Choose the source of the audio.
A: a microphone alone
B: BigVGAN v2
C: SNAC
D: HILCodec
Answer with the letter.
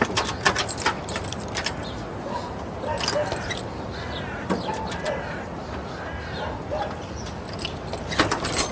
A